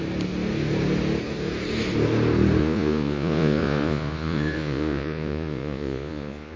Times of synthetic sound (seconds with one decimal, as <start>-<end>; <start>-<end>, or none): 2.6-6.6